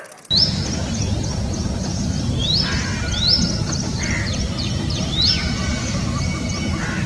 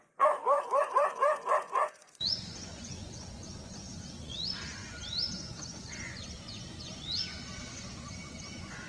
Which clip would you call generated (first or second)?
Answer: second